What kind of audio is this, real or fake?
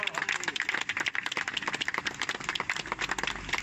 real